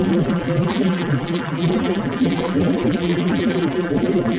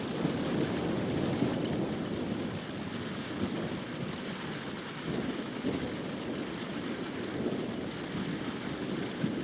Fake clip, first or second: first